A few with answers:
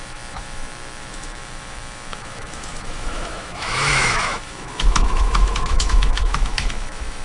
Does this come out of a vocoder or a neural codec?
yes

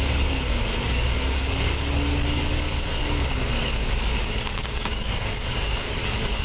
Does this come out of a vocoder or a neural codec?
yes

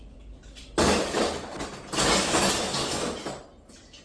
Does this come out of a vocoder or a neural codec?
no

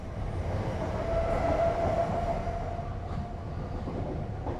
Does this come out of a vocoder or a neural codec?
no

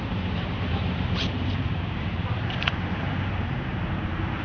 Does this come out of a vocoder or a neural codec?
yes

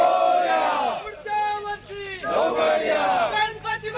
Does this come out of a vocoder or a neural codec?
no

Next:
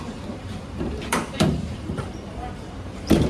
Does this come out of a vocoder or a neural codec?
yes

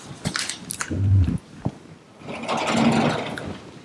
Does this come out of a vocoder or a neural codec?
no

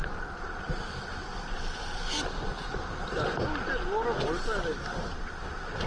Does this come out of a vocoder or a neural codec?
no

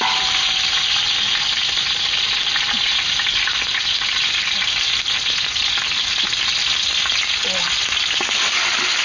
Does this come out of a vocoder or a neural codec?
no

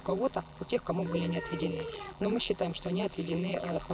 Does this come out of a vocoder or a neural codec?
yes